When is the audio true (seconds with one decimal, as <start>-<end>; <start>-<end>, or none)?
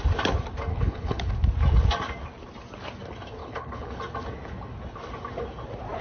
0.0-0.7; 1.3-3.4; 4.0-6.0